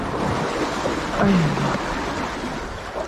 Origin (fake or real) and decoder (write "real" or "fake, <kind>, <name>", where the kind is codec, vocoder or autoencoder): real